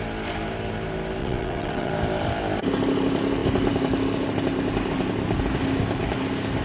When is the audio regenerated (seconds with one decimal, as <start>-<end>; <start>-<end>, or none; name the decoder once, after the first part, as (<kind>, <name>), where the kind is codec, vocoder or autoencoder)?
1.2-1.9 (vocoder, WaveNeXt)